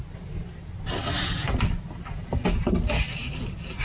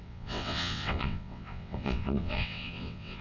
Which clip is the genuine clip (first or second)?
first